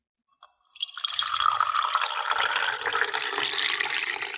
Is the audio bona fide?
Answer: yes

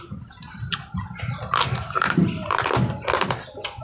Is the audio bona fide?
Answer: yes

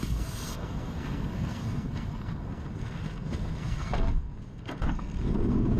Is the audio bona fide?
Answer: no